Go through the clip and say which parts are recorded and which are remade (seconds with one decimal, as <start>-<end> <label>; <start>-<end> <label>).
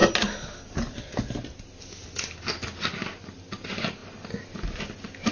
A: 0.0-5.3 recorded